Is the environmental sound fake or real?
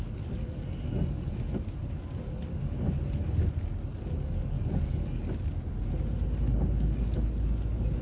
real